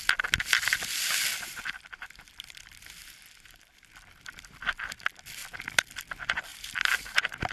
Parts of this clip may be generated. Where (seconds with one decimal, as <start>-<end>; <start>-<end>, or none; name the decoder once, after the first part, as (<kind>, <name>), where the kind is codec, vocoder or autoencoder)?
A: 1.3-2.6 (vocoder, BigVGAN v2); 6.5-7.5